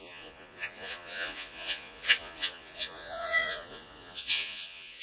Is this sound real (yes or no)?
no